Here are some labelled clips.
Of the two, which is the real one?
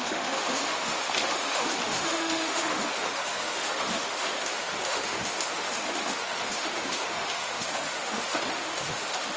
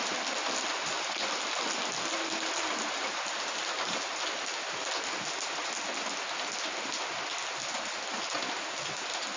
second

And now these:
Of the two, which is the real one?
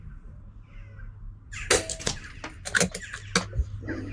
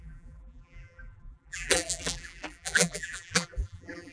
first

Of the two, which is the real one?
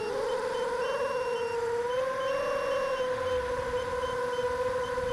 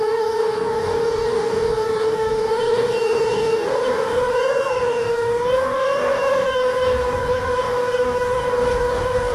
first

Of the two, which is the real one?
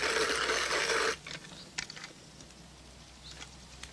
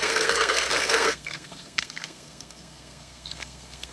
first